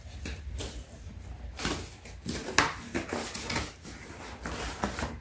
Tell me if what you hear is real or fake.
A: real